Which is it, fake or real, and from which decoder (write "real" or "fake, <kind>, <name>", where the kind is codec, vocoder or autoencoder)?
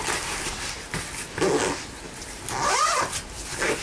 real